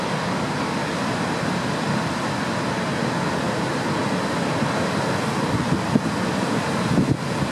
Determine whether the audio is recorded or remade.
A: recorded